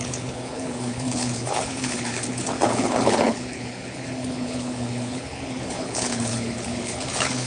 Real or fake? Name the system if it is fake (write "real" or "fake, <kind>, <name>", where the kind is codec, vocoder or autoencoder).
fake, codec, HILCodec